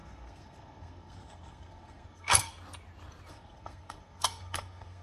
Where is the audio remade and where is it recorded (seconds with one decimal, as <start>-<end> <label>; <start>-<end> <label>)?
0.0-2.5 remade; 2.5-3.3 recorded; 3.3-5.0 remade